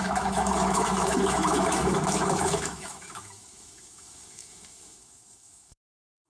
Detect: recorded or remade remade